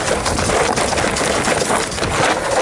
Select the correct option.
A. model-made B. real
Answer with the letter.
B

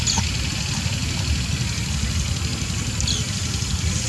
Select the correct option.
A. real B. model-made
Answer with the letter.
A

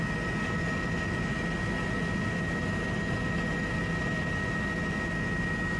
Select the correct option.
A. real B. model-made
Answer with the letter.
A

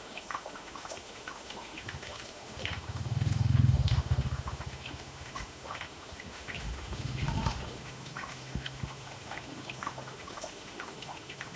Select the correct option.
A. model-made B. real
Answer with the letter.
A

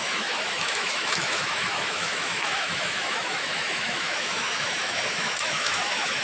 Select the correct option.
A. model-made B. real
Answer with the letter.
A